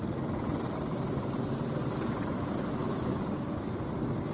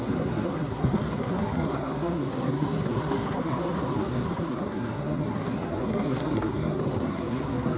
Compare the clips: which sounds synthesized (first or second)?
second